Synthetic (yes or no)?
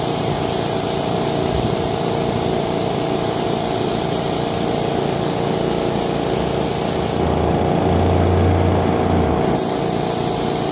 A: no